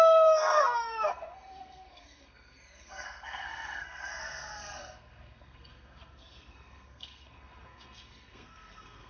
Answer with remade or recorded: remade